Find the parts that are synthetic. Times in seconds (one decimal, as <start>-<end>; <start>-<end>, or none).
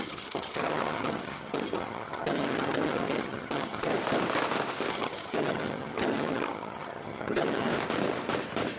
0.0-3.9; 4.9-7.7